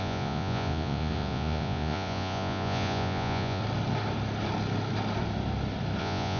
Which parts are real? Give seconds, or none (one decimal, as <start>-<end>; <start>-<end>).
3.6-6.0